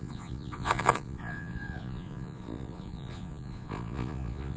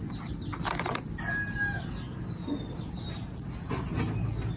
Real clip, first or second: second